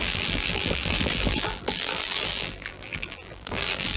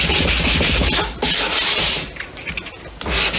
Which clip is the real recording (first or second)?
second